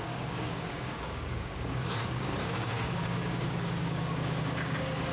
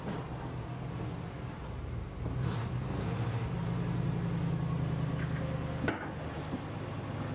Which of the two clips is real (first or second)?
second